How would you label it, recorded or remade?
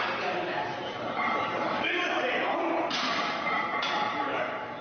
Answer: remade